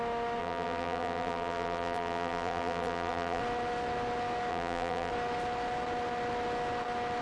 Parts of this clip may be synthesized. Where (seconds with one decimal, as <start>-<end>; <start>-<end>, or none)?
0.4-3.4; 4.5-5.1